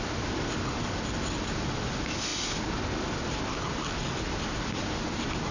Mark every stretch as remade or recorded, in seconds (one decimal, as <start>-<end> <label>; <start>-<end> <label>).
0.0-5.5 recorded